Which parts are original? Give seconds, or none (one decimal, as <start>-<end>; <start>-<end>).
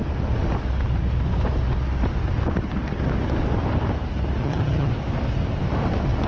0.0-4.4; 4.9-6.3